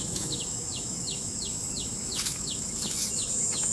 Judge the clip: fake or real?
fake